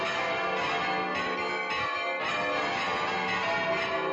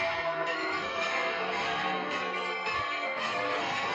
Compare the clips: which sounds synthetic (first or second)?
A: second